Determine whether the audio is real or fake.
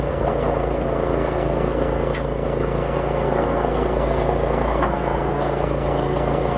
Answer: fake